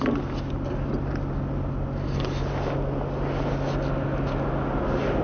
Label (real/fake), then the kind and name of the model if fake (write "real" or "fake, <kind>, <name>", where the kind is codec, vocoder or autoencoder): real